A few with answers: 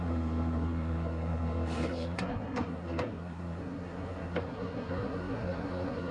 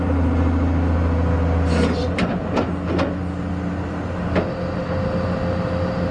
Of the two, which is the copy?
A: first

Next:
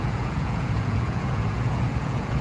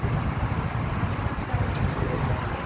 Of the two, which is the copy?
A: first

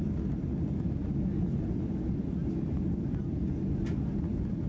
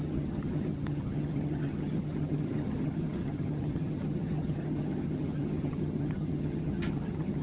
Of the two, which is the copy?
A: second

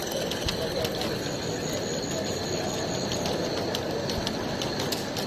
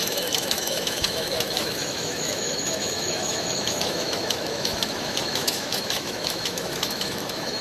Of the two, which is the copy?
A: second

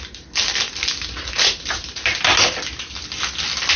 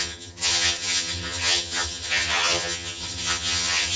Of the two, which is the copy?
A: second